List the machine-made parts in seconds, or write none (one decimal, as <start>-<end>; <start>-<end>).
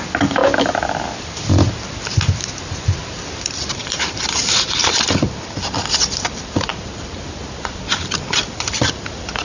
0.0-0.4; 2.6-6.7; 8.0-9.4